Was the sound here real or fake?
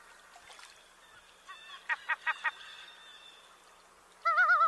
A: real